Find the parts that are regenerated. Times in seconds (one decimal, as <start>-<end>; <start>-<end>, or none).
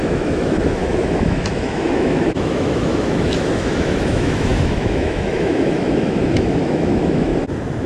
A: 0.0-7.3